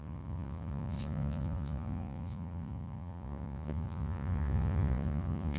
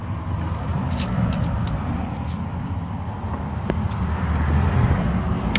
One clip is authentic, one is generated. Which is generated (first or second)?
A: first